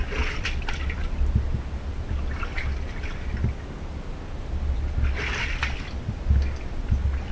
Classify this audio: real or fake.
real